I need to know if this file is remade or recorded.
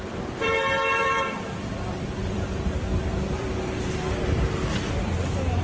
remade